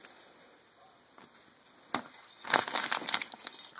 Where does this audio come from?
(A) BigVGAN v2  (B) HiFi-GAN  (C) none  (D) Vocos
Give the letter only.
C